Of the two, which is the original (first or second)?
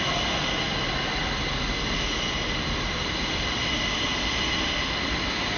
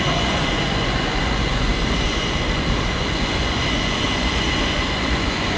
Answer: first